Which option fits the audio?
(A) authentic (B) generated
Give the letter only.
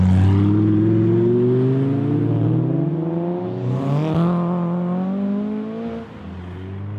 A